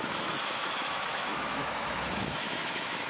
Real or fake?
fake